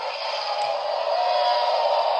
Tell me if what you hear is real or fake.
real